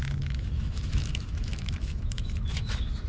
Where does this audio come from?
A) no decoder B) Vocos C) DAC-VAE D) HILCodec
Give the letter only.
C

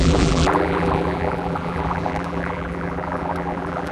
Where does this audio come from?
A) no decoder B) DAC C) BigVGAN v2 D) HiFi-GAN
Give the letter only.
C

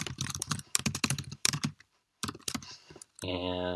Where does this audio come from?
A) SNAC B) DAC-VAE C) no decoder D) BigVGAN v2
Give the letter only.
D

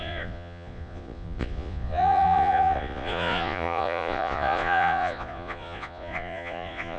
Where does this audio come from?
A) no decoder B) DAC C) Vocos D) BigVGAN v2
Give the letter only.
C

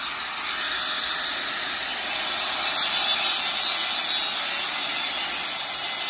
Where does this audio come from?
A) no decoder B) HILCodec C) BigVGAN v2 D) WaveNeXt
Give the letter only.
A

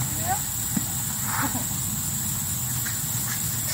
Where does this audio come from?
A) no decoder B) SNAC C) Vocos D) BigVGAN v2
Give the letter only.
A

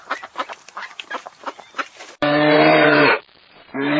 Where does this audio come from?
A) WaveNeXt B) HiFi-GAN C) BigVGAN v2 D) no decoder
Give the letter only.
C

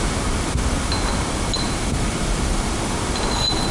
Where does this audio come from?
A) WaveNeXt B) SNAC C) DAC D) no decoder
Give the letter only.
D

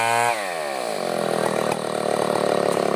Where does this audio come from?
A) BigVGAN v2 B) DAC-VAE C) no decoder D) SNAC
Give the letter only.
C